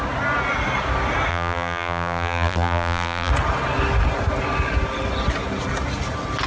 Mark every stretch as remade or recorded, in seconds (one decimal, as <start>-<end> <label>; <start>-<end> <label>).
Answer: 0.0-1.3 recorded; 1.3-3.3 remade; 3.3-6.5 recorded